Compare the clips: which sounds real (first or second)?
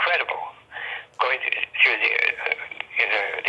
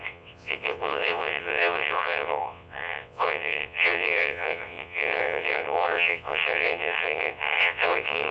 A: first